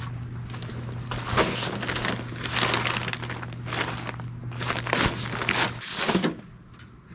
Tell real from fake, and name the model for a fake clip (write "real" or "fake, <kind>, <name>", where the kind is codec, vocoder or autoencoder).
real